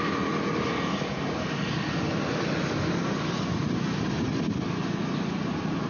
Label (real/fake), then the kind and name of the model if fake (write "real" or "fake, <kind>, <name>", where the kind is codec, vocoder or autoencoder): real